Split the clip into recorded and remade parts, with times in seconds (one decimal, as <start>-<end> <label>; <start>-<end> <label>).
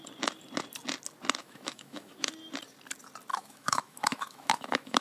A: 0.0-1.4 recorded; 1.4-2.3 remade; 2.3-3.3 recorded; 3.3-5.0 remade